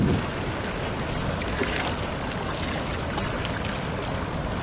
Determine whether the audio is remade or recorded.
recorded